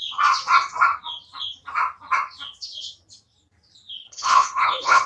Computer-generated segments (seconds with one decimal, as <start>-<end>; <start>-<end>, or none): 4.0-5.1